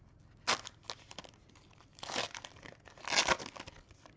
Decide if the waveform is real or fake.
real